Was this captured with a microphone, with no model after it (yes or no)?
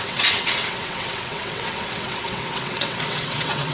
no